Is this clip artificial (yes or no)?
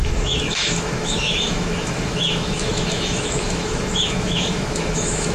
yes